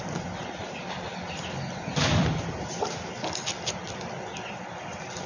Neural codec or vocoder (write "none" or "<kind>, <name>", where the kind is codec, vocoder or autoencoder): vocoder, BigVGAN v2